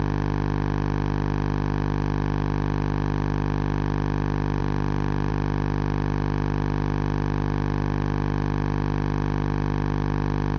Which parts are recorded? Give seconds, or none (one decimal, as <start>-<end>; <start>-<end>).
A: 0.0-10.6